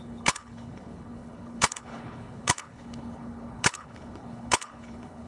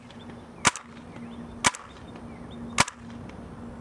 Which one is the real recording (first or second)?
second